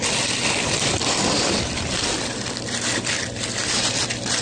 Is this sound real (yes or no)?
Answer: yes